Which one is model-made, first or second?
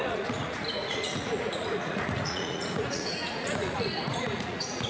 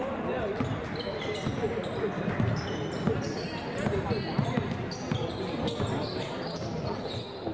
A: first